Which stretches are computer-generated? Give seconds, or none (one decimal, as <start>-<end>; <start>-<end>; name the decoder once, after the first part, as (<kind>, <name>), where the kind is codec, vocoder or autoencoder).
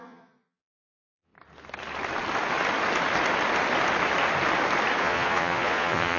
0.0-1.3 (vocoder, Vocos); 5.0-6.2